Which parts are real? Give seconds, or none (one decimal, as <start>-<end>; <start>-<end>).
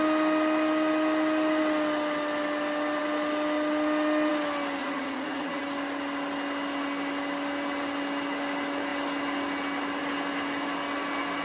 0.0-4.8; 5.6-11.4